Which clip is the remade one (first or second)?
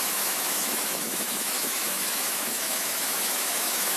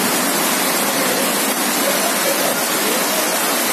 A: first